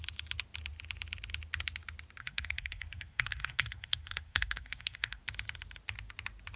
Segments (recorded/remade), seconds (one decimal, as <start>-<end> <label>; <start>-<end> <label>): 0.0-2.2 recorded; 2.2-5.2 remade; 5.2-6.6 recorded